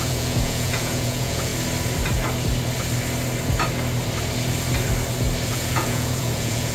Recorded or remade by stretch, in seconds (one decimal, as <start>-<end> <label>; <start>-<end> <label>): 0.0-1.5 remade; 1.5-5.5 recorded; 5.5-6.7 remade